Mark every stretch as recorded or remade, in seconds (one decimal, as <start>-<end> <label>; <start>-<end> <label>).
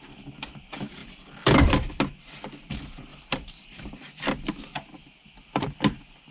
0.0-1.0 recorded; 1.0-2.0 remade; 2.0-3.1 recorded; 3.1-3.8 remade; 3.8-6.3 recorded